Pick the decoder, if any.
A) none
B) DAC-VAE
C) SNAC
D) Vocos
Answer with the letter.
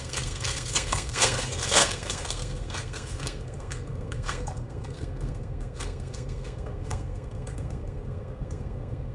C